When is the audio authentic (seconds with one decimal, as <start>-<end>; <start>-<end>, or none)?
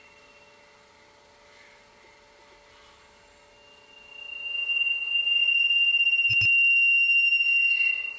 0.0-8.2